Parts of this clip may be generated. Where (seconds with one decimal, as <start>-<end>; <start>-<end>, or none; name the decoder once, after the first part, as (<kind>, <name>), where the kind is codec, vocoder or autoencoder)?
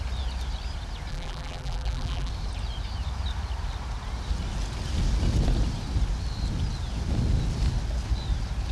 1.1-2.3 (vocoder, BigVGAN v2)